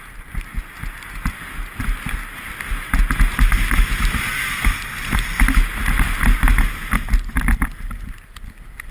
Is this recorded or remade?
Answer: recorded